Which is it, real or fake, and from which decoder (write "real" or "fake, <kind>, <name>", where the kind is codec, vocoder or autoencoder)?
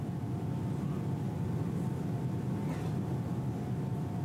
real